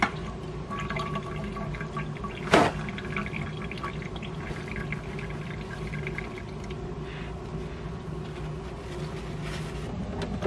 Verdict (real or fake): real